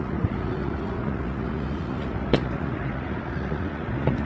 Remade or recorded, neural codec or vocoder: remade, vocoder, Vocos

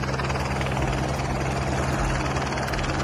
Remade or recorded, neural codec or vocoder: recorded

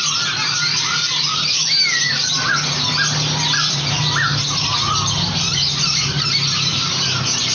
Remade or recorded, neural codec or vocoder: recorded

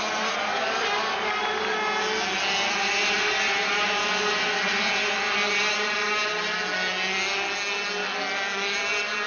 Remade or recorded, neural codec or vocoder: recorded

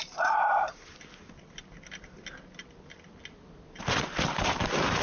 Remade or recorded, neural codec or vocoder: recorded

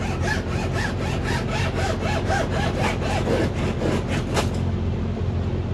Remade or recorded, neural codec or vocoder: recorded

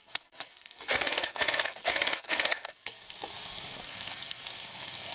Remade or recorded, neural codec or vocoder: remade, codec, SNAC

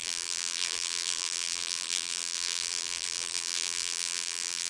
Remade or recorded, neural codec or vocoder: remade, vocoder, BigVGAN v2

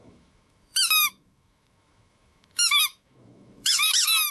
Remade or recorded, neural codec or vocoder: remade, autoencoder, DAC-VAE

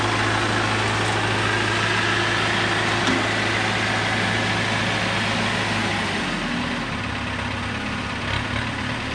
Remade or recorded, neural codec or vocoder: recorded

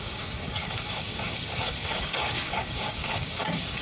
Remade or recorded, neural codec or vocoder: remade, codec, DAC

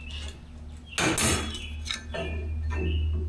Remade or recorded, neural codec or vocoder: recorded